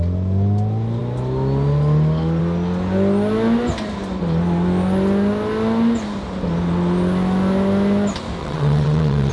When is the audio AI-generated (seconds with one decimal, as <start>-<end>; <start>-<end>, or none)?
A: 8.4-9.3